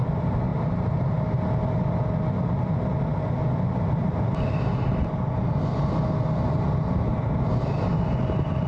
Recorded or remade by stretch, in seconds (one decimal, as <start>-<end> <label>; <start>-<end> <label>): 0.0-8.7 recorded